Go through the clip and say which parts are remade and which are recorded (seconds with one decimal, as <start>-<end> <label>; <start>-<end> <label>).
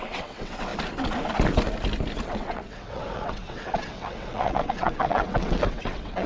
0.0-0.7 remade; 0.7-2.2 recorded; 2.2-6.3 remade